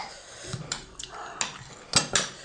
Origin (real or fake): real